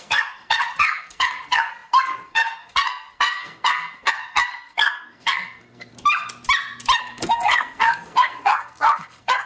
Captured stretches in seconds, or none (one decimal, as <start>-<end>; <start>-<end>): 5.9-7.0